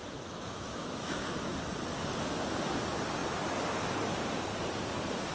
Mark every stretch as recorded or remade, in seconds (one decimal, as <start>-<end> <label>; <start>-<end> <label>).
0.0-1.6 remade; 1.6-5.3 recorded